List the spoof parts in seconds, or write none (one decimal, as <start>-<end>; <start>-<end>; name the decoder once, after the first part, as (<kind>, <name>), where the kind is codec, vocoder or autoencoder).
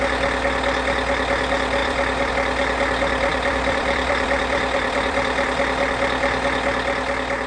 1.8-2.3 (vocoder, BigVGAN v2); 3.3-5.6